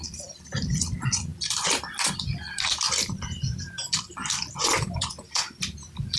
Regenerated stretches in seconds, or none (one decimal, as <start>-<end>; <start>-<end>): 0.0-6.2